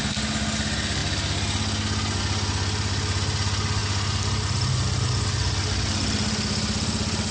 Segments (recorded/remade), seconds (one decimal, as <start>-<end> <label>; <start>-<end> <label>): 0.0-7.3 recorded